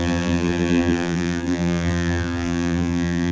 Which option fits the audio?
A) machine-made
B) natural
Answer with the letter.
A